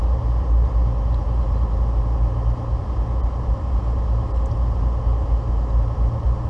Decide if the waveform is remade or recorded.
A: recorded